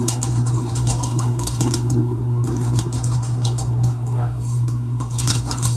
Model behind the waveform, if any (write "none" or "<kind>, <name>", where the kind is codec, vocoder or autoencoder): codec, SNAC